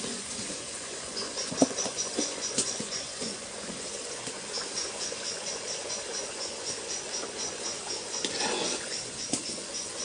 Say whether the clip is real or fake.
fake